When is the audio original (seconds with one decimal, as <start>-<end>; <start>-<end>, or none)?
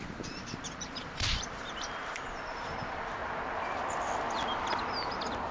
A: 3.2-4.5